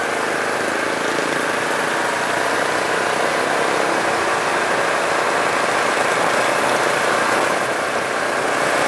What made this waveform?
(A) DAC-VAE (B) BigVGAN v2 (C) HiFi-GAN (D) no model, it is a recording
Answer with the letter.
D